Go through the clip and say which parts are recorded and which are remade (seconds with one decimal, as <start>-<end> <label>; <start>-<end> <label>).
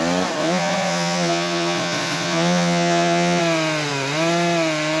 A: 0.0-0.4 recorded; 0.4-3.4 remade; 3.4-5.0 recorded